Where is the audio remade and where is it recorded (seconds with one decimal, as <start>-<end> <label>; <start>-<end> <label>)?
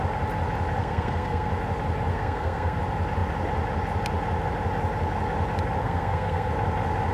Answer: 0.0-0.8 recorded; 0.8-1.5 remade; 1.5-2.1 recorded; 2.1-2.8 remade; 2.8-5.8 recorded; 5.8-6.5 remade; 6.5-7.1 recorded